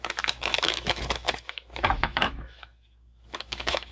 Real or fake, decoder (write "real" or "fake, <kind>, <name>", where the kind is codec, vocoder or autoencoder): fake, autoencoder, DAC-VAE